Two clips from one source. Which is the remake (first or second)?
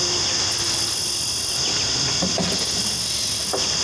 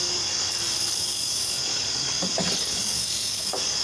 second